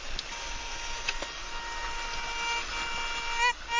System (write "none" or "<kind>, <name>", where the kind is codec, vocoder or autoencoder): none